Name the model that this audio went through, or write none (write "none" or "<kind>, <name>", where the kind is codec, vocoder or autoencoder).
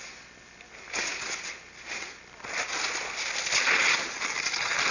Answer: none